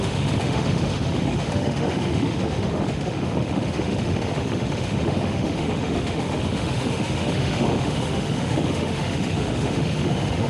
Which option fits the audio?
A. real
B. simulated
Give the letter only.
B